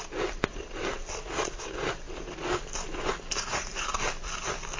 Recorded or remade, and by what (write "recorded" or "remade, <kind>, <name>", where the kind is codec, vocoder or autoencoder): recorded